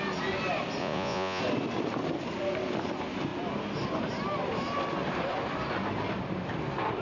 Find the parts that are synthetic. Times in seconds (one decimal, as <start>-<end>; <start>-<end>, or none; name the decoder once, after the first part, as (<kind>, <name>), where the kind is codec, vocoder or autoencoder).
0.8-1.4 (vocoder, Vocos)